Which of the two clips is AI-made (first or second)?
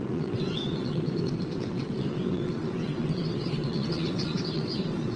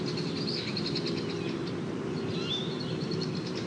first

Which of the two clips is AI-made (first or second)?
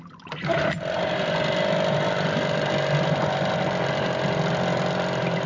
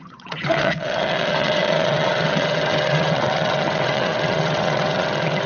second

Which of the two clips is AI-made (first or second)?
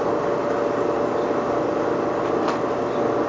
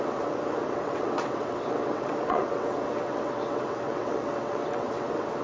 second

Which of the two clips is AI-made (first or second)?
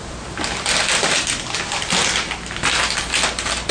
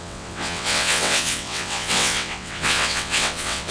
second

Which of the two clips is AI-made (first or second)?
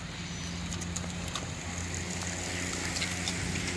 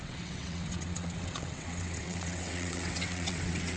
second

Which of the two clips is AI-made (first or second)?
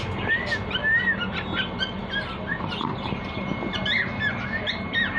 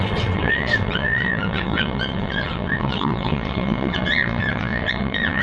second